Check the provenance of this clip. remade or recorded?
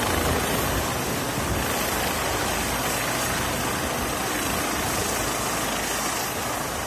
recorded